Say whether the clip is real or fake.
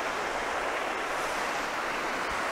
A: real